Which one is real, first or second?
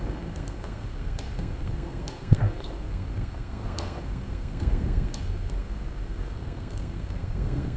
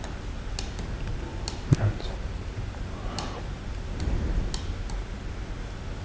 second